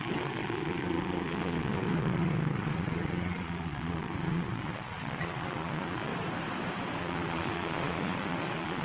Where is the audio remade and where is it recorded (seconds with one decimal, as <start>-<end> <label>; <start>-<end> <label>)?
0.0-6.1 remade; 6.1-7.0 recorded; 7.0-8.8 remade